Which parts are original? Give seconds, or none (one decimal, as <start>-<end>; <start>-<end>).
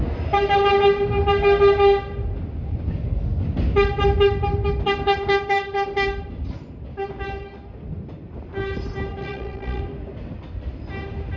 0.0-9.2; 9.8-11.4